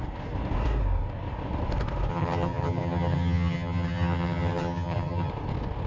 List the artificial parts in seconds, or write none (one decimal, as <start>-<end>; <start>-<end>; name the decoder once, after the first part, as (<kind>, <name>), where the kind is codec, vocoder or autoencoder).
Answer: 2.1-5.3 (vocoder, HiFi-GAN)